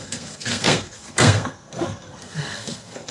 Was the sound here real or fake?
fake